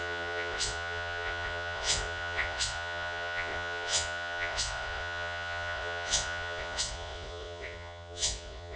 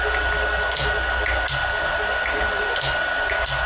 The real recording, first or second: second